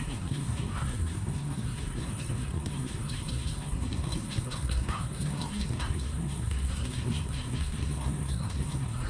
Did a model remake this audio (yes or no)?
yes